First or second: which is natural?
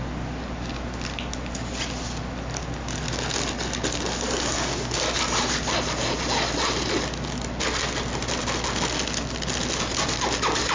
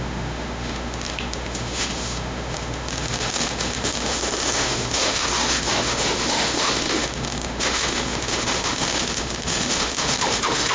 first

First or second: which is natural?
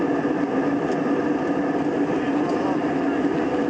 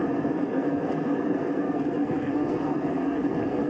first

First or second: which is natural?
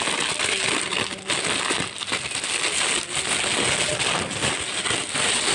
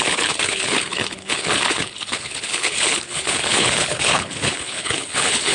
first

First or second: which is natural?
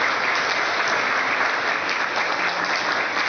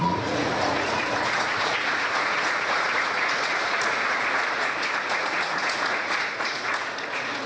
first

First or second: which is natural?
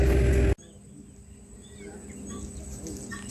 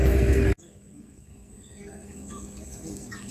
first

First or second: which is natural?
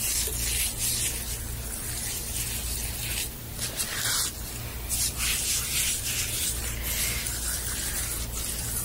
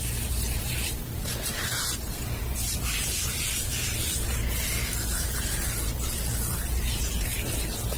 first